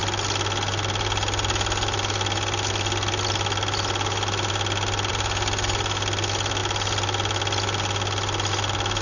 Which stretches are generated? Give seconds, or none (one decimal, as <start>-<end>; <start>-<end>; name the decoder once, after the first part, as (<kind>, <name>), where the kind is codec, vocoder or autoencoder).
none